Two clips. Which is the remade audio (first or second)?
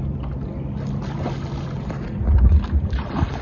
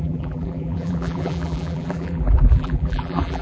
second